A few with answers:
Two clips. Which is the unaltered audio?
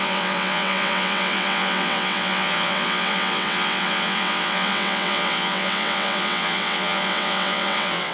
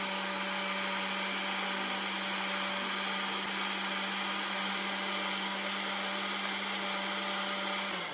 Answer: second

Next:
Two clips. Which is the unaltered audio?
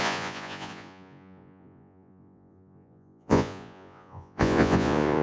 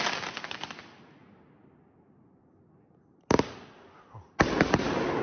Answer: second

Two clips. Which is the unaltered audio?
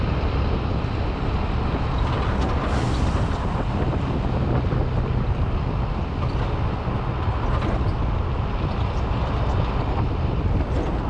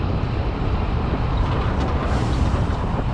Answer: first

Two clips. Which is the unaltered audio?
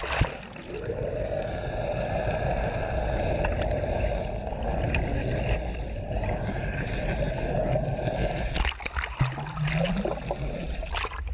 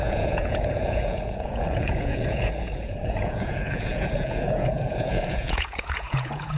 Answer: first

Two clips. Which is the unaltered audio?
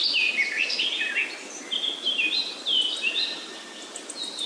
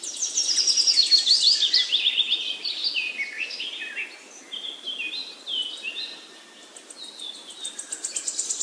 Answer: second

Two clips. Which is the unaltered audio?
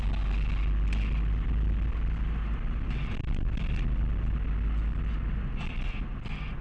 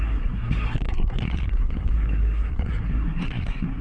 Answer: first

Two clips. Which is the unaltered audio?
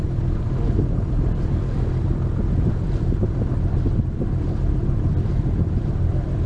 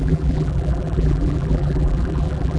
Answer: first